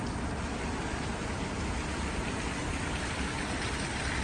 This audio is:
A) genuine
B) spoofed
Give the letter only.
A